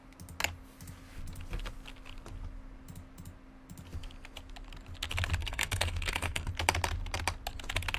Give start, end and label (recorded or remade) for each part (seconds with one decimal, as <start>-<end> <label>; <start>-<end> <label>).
0.0-5.4 recorded; 5.4-6.5 remade; 6.5-8.0 recorded